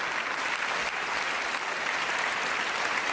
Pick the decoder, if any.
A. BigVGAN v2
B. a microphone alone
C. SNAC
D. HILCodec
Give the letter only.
B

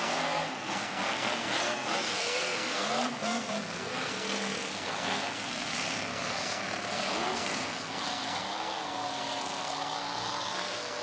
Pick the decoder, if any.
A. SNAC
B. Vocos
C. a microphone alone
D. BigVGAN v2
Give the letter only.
A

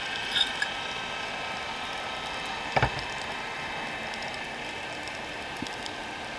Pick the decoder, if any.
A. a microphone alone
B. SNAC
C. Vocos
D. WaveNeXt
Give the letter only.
A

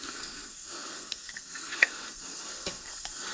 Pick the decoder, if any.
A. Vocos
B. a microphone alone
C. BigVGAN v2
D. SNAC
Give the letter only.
D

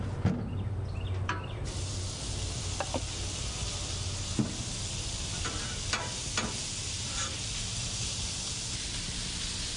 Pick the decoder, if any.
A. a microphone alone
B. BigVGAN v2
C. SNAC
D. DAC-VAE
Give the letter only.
A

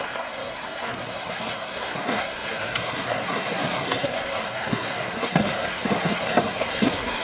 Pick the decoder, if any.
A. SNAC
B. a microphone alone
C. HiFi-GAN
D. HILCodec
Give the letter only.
A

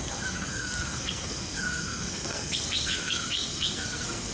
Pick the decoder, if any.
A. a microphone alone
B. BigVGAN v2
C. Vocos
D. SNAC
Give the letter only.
D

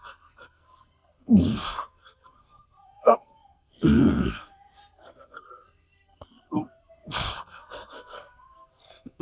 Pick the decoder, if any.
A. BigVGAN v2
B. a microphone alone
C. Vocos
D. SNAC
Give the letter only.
D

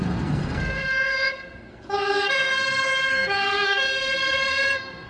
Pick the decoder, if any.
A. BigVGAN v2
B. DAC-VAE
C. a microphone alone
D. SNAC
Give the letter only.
D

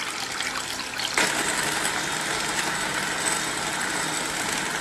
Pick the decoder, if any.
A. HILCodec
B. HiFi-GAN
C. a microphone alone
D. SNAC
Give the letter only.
C